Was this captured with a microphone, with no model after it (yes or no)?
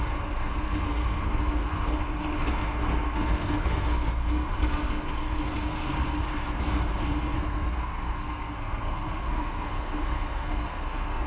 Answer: no